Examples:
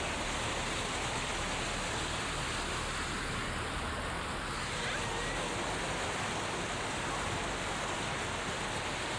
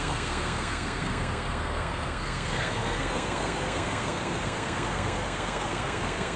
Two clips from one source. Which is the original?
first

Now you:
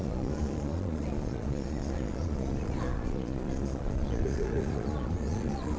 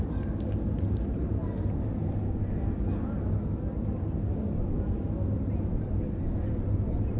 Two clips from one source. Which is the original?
second